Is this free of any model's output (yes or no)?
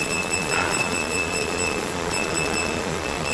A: no